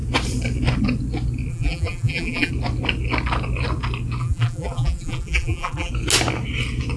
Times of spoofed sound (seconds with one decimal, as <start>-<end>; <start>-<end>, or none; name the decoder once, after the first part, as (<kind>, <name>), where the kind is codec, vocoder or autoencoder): 1.5-2.5 (vocoder, BigVGAN v2); 4.2-5.9